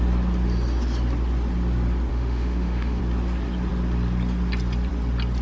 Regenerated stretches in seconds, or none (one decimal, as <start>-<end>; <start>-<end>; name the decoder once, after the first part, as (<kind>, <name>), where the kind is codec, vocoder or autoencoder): 2.1-3.0 (autoencoder, DAC-VAE)